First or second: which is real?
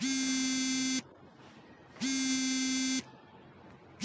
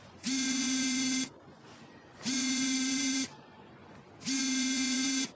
first